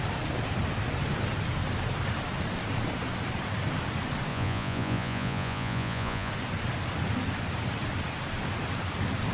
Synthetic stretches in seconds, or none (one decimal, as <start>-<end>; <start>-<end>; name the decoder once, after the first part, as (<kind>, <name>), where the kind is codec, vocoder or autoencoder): 4.3-6.3 (vocoder, Vocos)